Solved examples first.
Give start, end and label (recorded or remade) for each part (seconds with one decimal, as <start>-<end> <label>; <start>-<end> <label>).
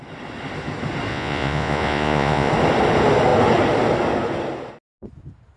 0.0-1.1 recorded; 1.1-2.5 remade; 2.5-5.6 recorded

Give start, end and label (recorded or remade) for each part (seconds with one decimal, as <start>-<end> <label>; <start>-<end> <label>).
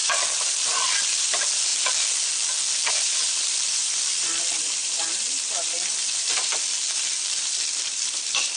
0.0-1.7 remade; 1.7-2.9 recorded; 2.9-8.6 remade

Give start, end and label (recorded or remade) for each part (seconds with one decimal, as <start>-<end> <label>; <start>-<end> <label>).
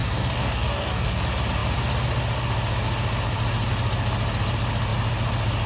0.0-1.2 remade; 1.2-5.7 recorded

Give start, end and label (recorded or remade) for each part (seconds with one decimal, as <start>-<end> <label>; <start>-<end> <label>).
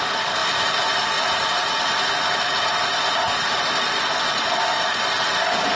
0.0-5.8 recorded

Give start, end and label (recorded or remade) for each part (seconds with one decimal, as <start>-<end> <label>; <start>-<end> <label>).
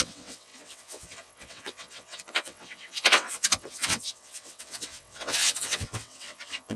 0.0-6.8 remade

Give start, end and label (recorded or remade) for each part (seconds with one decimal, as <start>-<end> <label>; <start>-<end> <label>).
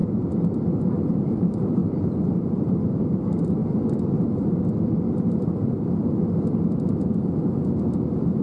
0.0-0.9 recorded; 0.9-3.6 remade; 3.6-8.4 recorded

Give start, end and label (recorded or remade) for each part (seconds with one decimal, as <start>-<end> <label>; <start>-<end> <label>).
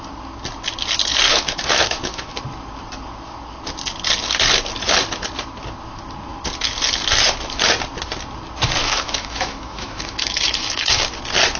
0.0-1.3 recorded; 1.3-2.4 remade; 2.4-8.8 recorded; 8.8-11.0 remade; 11.0-11.6 recorded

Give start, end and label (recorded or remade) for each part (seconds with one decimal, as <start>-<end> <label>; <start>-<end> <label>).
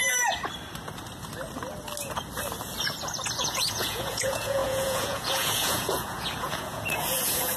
0.0-3.3 recorded; 3.3-7.6 remade